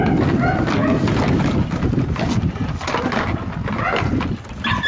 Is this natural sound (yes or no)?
yes